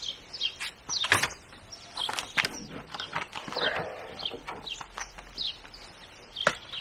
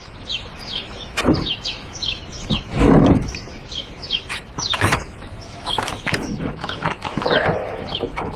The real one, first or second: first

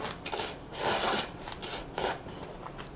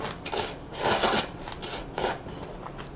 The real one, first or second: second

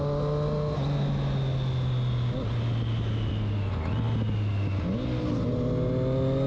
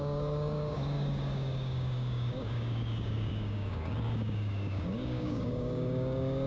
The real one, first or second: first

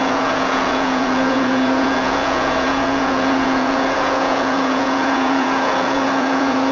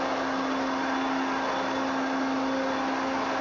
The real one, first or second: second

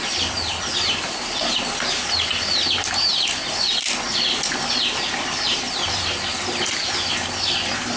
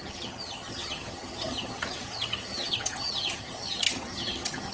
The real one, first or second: first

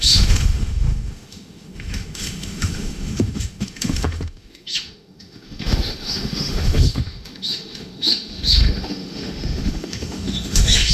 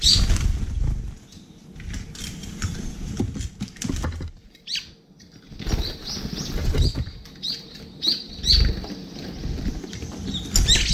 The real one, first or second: second